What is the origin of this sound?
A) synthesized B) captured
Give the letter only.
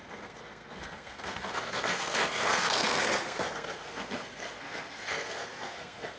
A